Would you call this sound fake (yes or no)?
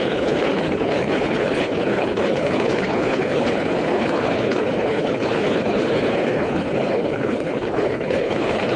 yes